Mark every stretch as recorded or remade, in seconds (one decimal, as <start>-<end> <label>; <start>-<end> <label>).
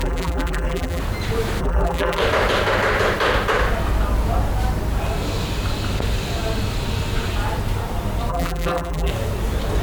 0.0-1.0 remade; 1.0-1.6 recorded; 1.6-2.2 remade; 2.2-8.3 recorded; 8.3-9.1 remade; 9.1-9.8 recorded